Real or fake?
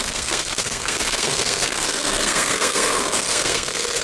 fake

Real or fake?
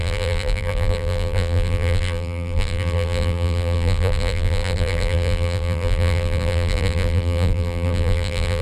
fake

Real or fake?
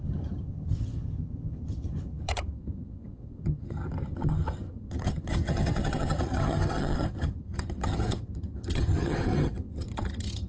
fake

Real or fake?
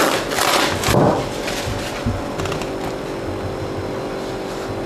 real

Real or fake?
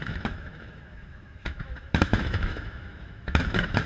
fake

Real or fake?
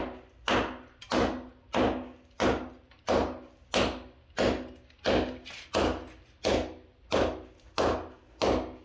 real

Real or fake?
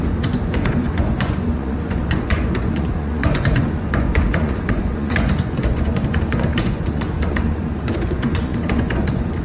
fake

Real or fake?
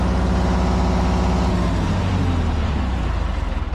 real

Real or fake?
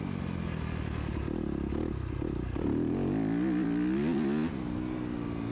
real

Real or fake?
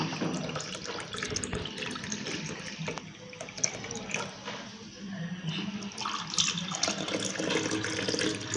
real